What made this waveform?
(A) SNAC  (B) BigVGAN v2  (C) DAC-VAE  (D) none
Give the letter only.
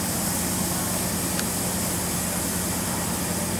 D